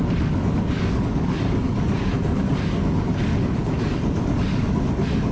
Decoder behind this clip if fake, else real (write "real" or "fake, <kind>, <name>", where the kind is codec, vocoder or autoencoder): fake, codec, DAC